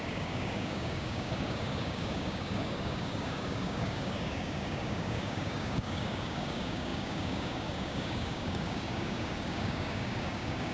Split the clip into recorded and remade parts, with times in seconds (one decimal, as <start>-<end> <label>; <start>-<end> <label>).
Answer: 0.0-10.7 remade